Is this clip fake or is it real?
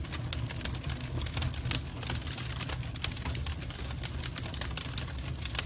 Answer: real